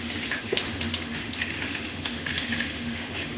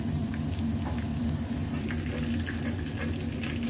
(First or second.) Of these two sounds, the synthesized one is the first